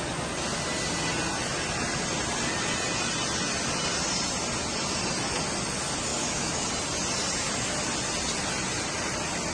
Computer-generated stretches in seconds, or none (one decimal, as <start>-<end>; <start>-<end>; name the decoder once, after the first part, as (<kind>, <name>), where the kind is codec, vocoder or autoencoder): 6.1-6.7 (autoencoder, DAC-VAE)